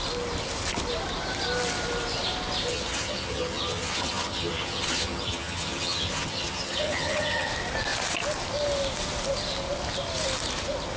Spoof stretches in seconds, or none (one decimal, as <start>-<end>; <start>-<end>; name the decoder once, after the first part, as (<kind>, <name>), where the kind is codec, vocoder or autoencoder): 2.7-7.5 (vocoder, HiFi-GAN)